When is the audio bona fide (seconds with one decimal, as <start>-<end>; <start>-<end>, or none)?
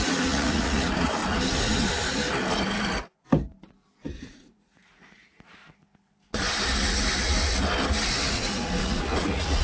1.2-4.3; 5.6-8.3